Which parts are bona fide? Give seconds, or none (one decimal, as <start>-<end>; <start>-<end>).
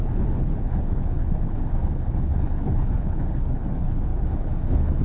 none